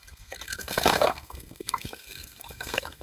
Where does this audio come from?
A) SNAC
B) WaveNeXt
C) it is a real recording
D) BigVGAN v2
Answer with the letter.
A